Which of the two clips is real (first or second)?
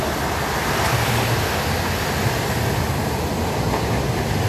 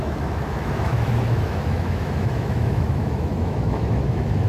first